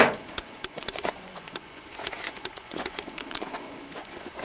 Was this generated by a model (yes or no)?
yes